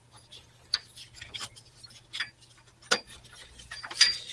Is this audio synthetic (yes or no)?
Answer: no